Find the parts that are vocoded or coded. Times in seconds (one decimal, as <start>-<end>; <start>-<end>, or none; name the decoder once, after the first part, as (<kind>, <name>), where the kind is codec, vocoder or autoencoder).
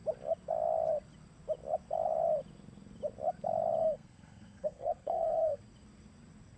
3.8-5.6 (codec, SNAC)